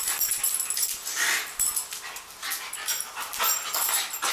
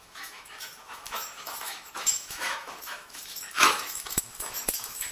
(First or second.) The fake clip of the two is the second